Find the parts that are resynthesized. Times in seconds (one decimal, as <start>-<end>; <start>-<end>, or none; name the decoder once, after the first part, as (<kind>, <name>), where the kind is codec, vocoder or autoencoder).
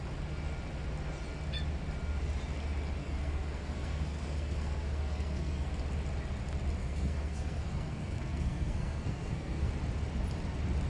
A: 3.0-5.7 (codec, SNAC); 6.8-9.7